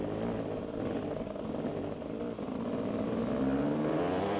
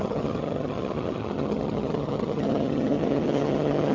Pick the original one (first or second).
first